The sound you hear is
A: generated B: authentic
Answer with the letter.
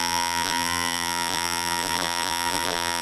A